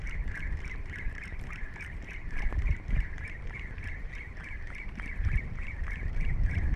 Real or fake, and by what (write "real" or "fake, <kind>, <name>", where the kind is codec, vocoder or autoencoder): fake, vocoder, BigVGAN v2